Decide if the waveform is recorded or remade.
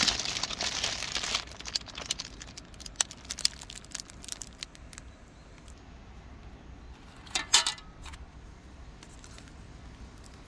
recorded